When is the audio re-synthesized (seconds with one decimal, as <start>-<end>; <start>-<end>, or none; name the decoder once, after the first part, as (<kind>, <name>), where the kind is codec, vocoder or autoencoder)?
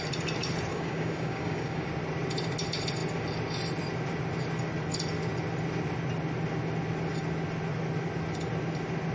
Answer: 0.7-1.9 (codec, DAC)